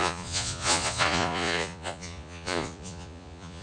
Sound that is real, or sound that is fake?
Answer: fake